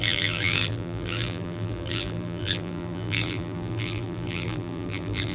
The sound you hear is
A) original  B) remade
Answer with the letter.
B